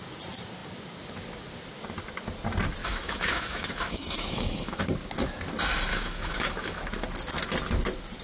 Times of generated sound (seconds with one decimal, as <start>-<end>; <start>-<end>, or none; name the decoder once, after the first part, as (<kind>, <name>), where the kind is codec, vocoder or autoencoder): 2.8-4.8 (autoencoder, DAC-VAE); 5.9-6.8